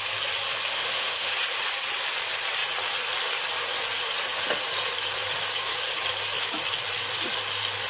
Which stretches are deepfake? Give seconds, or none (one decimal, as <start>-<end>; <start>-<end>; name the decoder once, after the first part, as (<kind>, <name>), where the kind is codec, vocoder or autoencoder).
0.7-1.3 (autoencoder, DAC-VAE)